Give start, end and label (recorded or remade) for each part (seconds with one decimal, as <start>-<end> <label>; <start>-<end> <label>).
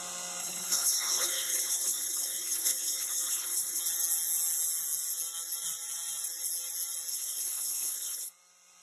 0.0-0.4 recorded; 0.4-3.8 remade; 3.8-7.1 recorded; 7.1-8.3 remade; 8.3-8.8 recorded